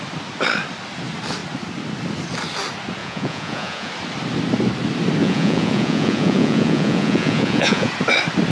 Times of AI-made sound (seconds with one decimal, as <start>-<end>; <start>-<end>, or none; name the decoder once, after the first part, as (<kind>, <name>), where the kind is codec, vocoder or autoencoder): 3.0-3.9 (vocoder, Vocos); 5.2-7.9